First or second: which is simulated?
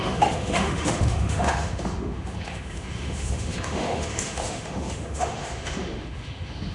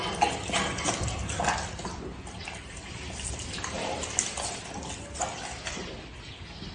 first